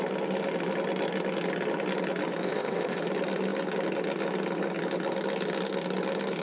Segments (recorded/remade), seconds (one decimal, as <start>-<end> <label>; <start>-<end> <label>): 0.0-2.4 recorded; 2.4-3.0 remade; 3.0-6.4 recorded